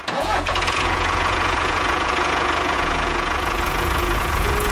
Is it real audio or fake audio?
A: fake